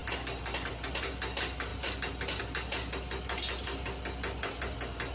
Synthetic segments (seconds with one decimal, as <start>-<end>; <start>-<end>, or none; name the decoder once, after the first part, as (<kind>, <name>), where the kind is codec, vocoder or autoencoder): none